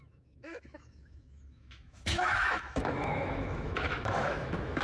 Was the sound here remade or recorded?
remade